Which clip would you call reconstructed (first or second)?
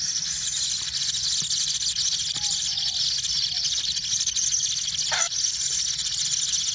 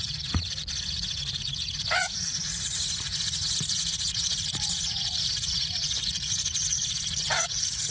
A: second